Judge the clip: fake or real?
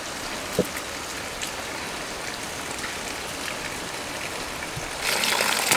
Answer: real